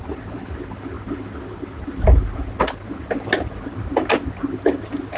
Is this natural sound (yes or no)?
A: yes